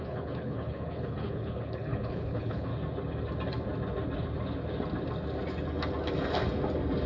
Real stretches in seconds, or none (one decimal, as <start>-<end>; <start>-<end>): 2.7-7.1